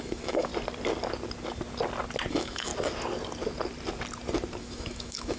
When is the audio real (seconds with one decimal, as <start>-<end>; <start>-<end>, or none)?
0.5-2.3; 2.7-4.6